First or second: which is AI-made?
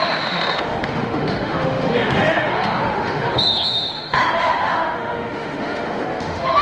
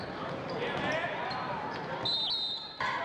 first